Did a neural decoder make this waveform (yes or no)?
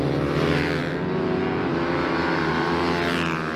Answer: no